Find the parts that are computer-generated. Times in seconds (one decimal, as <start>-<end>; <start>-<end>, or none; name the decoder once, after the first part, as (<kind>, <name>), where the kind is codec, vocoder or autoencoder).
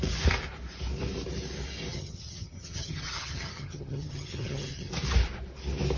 1.9-4.9 (vocoder, HiFi-GAN)